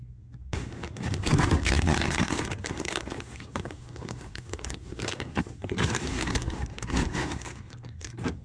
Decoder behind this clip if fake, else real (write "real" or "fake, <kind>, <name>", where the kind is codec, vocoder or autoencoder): fake, codec, SNAC